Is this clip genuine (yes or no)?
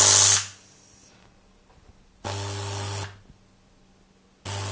yes